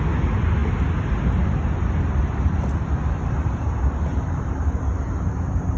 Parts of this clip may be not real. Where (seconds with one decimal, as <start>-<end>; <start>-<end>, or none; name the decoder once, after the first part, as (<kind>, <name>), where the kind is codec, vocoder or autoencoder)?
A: 4.1-4.8 (vocoder, BigVGAN v2)